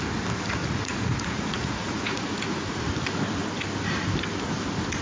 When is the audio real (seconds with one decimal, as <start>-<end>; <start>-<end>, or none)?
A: 0.0-0.6; 2.8-5.0